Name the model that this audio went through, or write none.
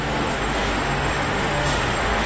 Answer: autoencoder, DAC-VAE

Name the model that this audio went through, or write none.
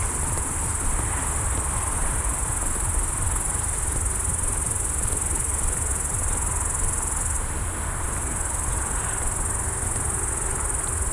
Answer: none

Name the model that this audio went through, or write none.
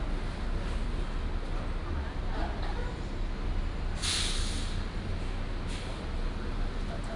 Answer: none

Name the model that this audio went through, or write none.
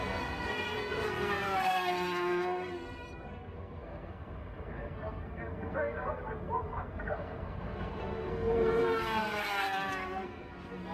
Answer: codec, SNAC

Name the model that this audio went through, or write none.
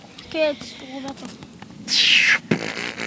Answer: none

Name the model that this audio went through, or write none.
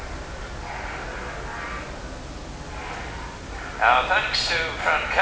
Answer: none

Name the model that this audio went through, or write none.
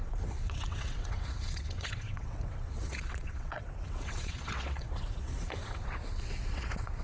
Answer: vocoder, WaveNeXt